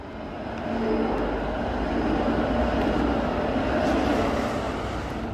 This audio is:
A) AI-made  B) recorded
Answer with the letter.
B